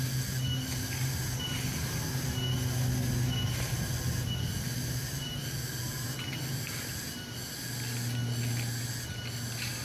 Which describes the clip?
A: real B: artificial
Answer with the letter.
A